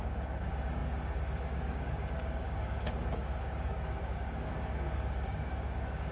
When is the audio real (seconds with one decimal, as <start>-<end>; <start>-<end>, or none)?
none